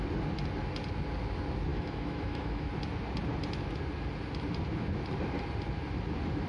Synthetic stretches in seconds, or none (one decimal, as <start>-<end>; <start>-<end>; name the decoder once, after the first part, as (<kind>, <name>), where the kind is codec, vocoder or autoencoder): 1.7-2.7 (autoencoder, DAC-VAE)